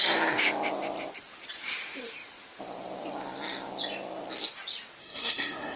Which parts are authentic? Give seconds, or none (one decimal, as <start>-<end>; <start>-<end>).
0.0-5.0